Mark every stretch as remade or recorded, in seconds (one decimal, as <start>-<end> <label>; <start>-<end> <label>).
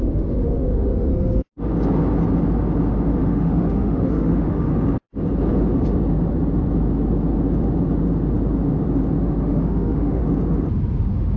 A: 0.0-1.1 remade; 1.1-3.2 recorded; 3.2-4.7 remade; 4.7-9.4 recorded; 9.4-10.2 remade; 10.2-11.0 recorded; 11.0-11.4 remade